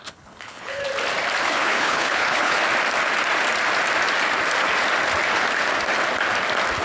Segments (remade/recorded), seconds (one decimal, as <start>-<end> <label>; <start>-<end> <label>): 0.0-0.8 remade; 0.8-1.4 recorded; 1.4-2.6 remade; 2.6-6.8 recorded